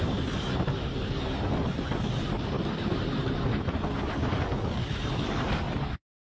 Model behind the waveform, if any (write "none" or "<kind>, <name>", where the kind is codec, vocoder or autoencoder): none